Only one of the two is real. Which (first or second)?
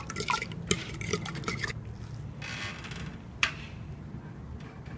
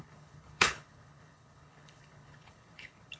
first